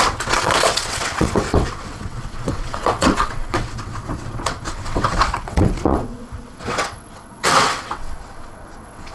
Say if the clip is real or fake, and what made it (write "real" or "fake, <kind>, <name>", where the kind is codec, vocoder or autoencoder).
fake, vocoder, WaveNeXt